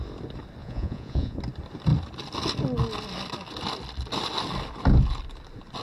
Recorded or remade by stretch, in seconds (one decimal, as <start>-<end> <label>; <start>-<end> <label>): 0.0-0.6 recorded; 0.6-1.4 remade; 1.4-5.8 recorded